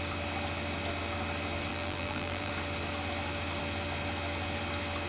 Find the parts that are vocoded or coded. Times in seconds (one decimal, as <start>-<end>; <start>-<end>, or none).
1.7-2.5